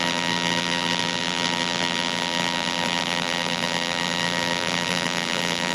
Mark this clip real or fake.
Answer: fake